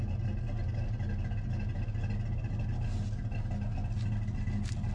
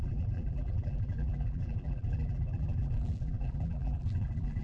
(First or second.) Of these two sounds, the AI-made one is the second